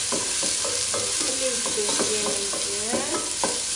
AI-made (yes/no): no